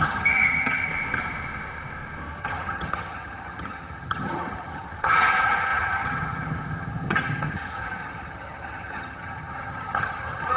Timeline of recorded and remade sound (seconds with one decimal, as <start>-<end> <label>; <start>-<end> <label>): 0.0-0.9 remade; 0.9-2.4 recorded; 2.4-10.6 remade